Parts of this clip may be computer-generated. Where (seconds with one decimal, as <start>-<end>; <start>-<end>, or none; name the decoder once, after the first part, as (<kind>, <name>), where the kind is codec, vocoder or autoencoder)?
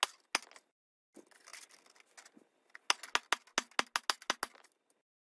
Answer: none